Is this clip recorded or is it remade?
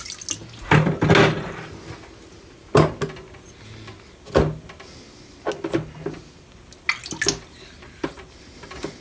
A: recorded